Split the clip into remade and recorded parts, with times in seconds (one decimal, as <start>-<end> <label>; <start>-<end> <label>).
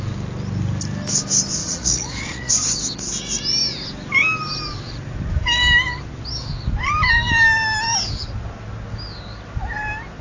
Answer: 0.0-1.6 recorded; 1.6-2.5 remade; 2.5-10.2 recorded